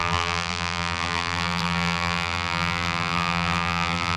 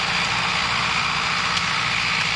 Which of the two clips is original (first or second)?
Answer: second